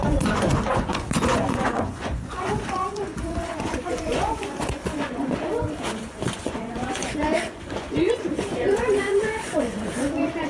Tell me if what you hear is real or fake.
fake